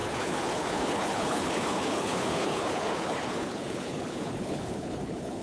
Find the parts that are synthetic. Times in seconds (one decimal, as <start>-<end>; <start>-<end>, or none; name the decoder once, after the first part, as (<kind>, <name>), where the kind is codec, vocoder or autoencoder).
0.0-5.4 (codec, HILCodec)